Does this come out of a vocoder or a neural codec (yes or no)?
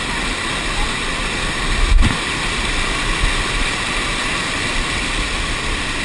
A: no